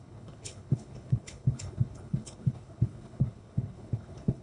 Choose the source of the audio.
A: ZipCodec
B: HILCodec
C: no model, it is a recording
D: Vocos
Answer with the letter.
B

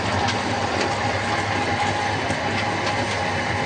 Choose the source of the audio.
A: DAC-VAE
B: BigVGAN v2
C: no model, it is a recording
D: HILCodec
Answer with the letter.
C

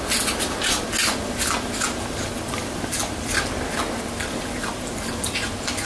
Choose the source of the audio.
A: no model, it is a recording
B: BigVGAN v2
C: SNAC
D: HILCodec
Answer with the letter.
A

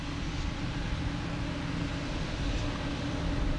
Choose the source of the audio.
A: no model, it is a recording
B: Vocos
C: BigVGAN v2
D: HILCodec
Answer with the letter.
A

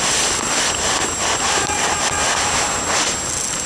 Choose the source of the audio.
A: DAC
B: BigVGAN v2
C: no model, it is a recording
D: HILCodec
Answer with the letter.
C